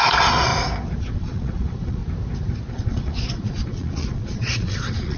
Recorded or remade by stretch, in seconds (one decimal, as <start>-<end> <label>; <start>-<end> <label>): 0.0-0.5 remade; 0.5-1.0 recorded; 1.0-2.0 remade; 2.0-2.7 recorded; 2.7-5.2 remade

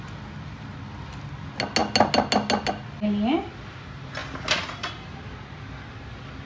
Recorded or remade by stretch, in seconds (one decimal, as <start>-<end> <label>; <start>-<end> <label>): 0.0-6.5 recorded

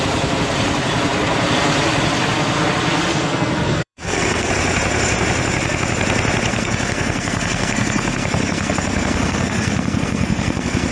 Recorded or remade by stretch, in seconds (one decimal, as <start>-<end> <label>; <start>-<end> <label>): 0.0-3.1 recorded; 3.1-4.5 remade; 4.5-6.5 recorded; 6.5-10.9 remade

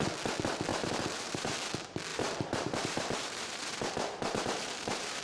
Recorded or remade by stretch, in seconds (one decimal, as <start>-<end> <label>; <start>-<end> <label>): 0.0-0.7 recorded; 0.7-1.5 remade; 1.5-2.1 recorded; 2.1-5.2 remade

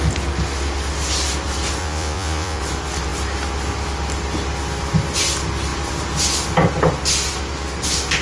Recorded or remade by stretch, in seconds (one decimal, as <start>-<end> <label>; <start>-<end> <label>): 0.0-1.8 recorded; 1.8-2.6 remade; 2.6-8.2 recorded

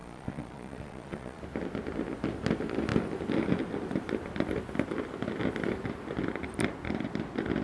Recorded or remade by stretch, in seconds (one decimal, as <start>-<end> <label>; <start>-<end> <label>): 0.0-1.4 remade; 1.4-7.6 recorded